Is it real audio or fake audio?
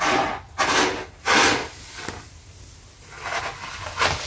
real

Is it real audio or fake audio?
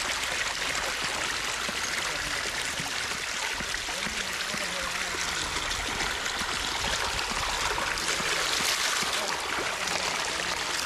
real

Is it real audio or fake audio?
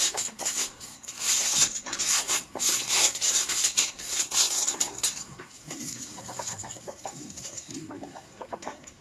fake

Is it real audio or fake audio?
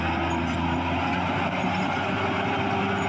real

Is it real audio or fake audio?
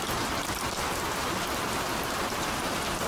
real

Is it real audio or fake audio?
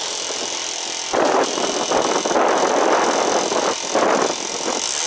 real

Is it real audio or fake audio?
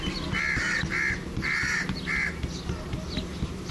real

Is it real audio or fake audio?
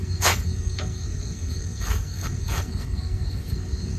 fake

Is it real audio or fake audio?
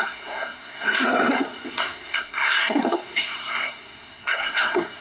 fake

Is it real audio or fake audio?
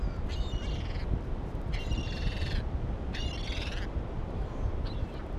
real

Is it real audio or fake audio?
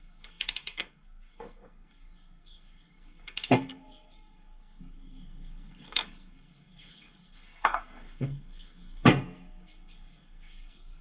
fake